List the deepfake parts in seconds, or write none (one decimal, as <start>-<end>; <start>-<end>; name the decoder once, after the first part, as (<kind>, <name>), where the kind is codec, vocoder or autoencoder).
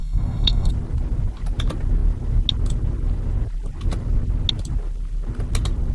0.0-0.7 (codec, SNAC)